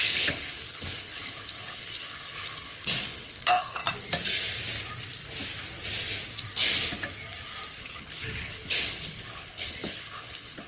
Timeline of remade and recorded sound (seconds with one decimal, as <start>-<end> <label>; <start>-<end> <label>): 0.0-3.8 remade; 3.8-7.8 recorded; 7.8-10.7 remade